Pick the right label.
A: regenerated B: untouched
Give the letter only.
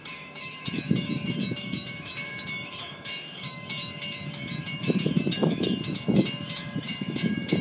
A